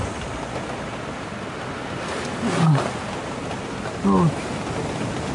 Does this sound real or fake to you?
real